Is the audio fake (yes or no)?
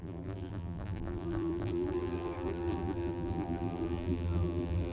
yes